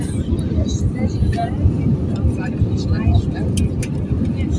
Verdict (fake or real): real